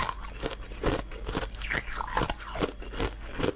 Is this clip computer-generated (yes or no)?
no